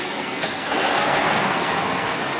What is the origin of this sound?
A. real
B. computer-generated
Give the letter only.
B